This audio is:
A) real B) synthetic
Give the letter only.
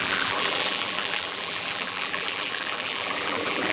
B